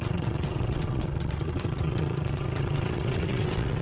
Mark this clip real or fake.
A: fake